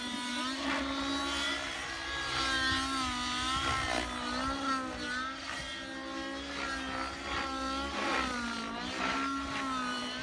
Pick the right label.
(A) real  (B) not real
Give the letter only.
A